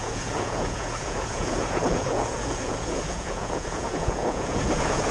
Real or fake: fake